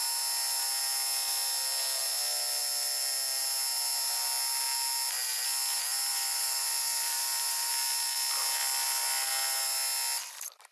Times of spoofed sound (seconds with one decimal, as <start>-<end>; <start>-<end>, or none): 6.1-7.7